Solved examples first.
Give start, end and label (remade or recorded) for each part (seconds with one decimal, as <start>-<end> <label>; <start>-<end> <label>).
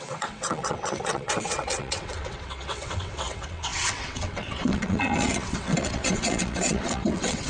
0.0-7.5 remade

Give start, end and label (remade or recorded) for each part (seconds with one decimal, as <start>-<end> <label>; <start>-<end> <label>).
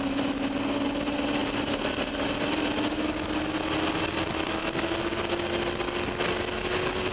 0.0-7.1 recorded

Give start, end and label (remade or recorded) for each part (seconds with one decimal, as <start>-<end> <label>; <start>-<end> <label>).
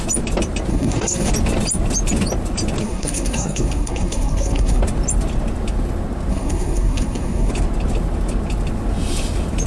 0.0-0.7 recorded; 0.7-1.3 remade; 1.3-2.8 recorded; 2.8-4.8 remade; 4.8-6.3 recorded; 6.3-7.5 remade; 7.5-9.7 recorded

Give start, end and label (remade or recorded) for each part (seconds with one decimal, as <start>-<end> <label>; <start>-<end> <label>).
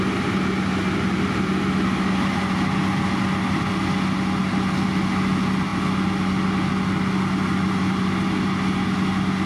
0.0-9.5 recorded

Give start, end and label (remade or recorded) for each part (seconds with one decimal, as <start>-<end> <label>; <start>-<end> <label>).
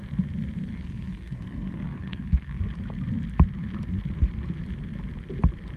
0.0-0.7 recorded; 0.7-2.6 remade; 2.6-5.8 recorded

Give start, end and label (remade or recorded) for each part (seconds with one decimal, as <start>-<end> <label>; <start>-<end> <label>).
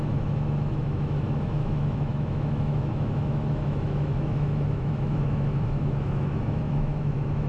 0.0-7.5 remade